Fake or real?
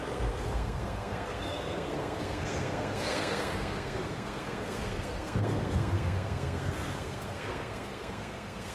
fake